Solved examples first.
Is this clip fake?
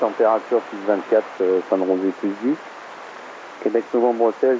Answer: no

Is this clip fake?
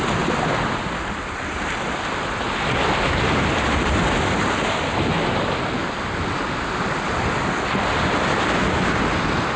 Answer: no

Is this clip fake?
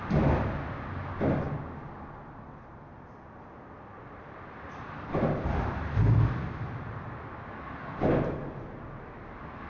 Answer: no